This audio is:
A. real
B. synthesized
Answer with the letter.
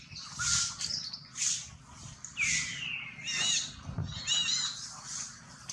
A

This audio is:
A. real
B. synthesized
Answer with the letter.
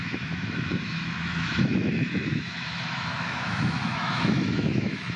B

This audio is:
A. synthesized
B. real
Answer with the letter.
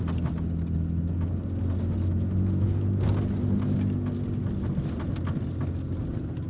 B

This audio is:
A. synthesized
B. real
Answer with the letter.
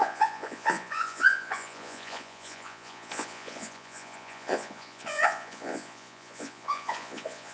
A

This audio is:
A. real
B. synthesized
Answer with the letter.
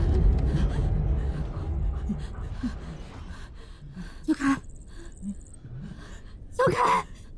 A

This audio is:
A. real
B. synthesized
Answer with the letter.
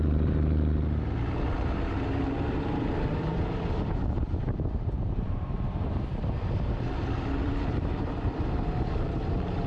B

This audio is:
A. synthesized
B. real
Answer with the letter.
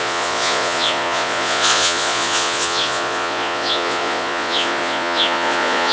A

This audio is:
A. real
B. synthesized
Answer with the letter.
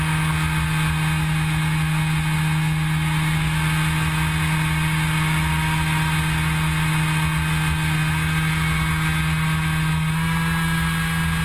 A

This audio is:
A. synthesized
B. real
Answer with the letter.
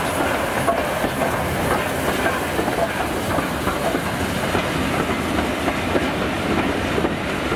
B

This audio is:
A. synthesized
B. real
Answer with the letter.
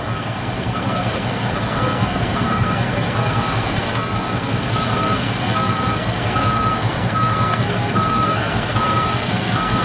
A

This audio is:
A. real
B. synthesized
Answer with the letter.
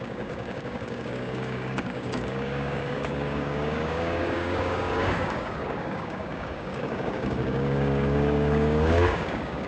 B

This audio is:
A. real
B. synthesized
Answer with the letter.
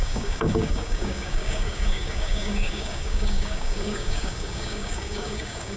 B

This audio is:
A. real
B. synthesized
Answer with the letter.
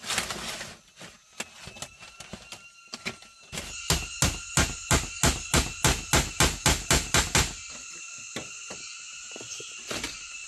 A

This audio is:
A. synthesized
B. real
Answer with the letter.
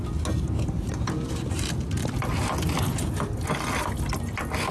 B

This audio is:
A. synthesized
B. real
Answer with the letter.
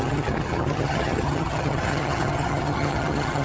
A